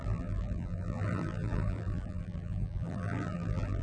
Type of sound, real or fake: fake